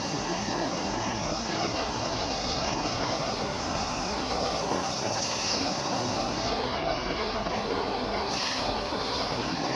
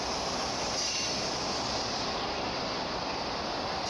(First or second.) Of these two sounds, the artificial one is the first